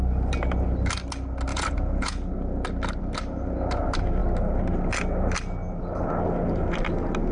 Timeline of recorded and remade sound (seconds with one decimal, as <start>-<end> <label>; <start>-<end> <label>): 0.0-1.5 recorded; 1.5-2.3 remade; 2.3-7.3 recorded